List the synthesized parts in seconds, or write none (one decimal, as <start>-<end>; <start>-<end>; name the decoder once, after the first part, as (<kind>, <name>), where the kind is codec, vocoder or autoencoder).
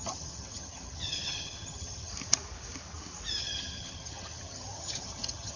0.0-2.1 (vocoder, HiFi-GAN); 3.4-5.6